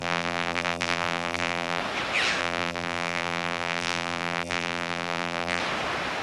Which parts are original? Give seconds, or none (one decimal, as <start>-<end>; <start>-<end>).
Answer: 1.8-2.4; 5.6-6.2